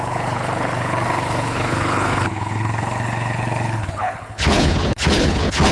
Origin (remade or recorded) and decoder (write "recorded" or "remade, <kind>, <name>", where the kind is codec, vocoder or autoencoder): remade, codec, HILCodec